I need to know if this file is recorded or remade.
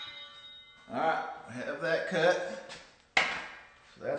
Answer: recorded